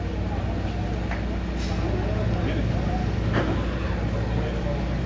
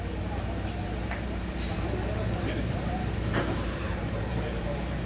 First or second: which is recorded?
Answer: first